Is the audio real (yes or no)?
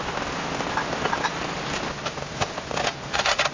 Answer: yes